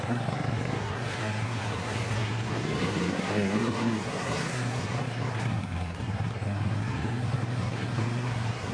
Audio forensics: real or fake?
fake